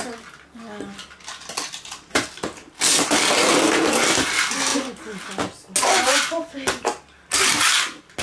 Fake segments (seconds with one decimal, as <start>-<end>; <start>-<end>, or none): none